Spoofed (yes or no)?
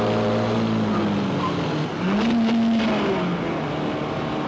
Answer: no